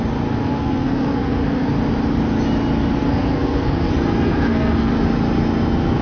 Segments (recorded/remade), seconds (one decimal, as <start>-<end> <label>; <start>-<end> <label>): 0.0-0.4 recorded; 0.4-1.7 remade; 1.7-3.0 recorded; 3.0-3.9 remade; 3.9-4.3 recorded; 4.3-4.9 remade; 4.9-6.0 recorded